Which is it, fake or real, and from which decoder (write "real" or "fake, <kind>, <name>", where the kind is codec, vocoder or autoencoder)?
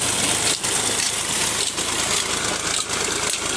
real